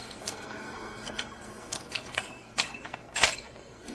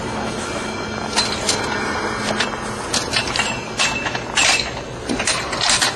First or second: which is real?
second